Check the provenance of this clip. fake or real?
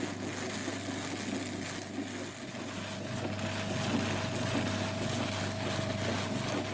real